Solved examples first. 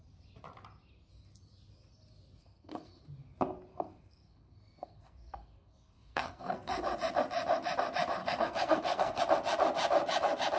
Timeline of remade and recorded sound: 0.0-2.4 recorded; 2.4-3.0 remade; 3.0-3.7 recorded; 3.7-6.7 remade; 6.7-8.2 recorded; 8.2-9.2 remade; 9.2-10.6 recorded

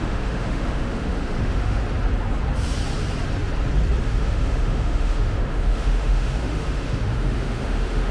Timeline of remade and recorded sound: 0.0-1.8 remade; 1.8-4.0 recorded; 4.0-8.1 remade

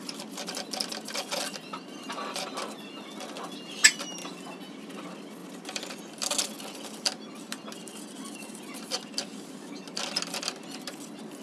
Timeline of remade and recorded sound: 0.0-11.4 recorded